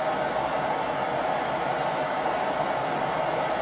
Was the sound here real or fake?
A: real